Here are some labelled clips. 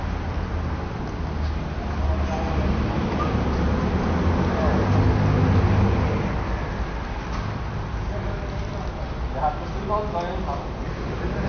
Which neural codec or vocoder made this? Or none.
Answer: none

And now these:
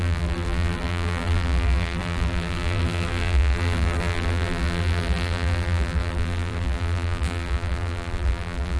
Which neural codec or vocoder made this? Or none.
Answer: vocoder, BigVGAN v2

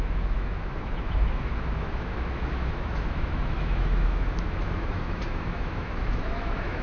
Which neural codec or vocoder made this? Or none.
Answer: autoencoder, DAC-VAE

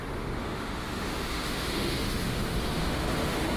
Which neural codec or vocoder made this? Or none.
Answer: autoencoder, DAC-VAE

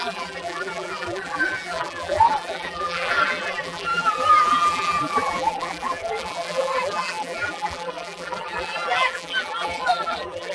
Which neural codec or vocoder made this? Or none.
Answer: vocoder, BigVGAN v2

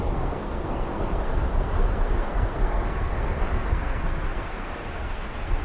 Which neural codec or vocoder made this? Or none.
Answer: codec, SNAC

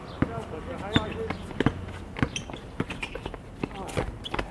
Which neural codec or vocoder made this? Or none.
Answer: none